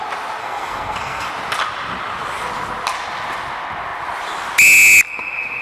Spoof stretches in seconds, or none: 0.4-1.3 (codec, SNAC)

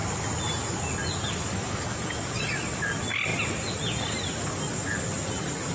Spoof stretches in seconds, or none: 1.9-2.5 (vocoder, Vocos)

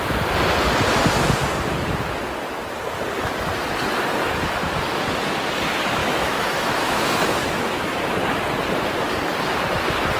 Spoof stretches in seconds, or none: 6.0-8.1 (autoencoder, DAC-VAE)

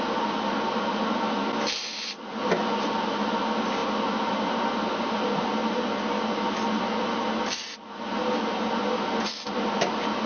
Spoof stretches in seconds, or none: none